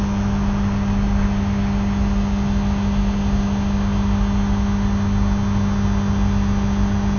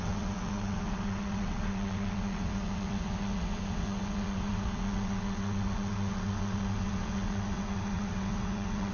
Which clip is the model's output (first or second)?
second